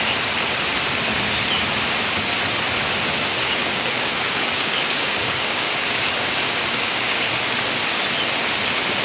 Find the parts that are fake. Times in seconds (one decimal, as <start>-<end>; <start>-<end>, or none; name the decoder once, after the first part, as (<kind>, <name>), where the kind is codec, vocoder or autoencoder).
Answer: 3.6-7.3 (codec, DAC)